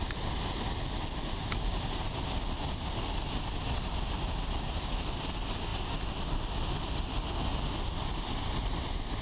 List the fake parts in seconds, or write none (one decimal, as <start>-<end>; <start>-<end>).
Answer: none